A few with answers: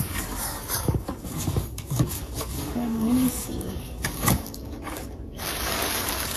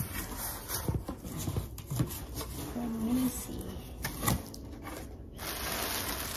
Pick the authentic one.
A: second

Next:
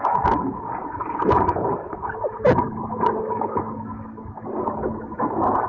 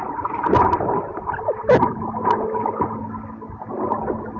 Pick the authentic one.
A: second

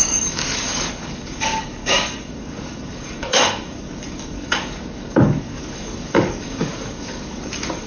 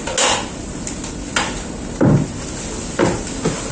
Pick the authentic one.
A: second